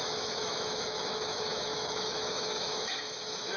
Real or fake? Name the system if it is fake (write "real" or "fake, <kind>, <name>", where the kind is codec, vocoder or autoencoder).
fake, autoencoder, DAC-VAE